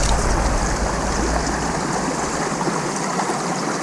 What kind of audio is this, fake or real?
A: real